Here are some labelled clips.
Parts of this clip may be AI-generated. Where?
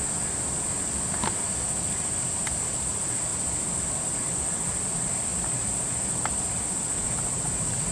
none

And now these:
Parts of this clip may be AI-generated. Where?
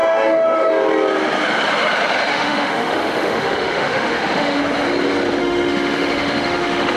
0.0-0.7 (autoencoder, DAC-VAE); 2.3-4.6; 5.4-7.0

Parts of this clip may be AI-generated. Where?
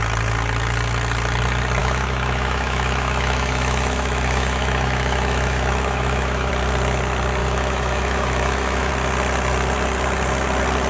1.8-6.5 (autoencoder, DAC-VAE); 7.4-8.9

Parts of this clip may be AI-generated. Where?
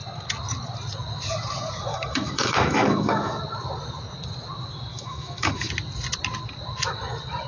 1.9-3.3 (autoencoder, DAC-VAE); 4.9-5.7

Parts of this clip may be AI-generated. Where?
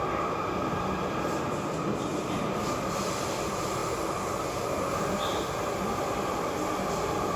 none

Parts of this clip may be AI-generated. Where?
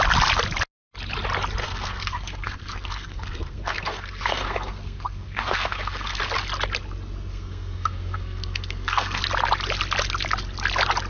1.6-6.2 (codec, SNAC); 7.3-9.2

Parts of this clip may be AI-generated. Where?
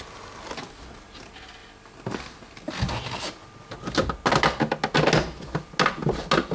none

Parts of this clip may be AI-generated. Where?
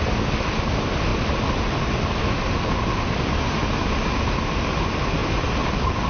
none